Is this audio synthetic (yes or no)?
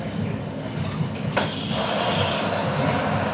no